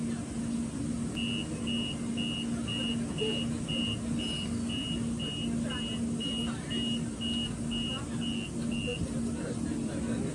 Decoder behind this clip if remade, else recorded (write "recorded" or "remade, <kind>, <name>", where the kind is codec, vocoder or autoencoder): recorded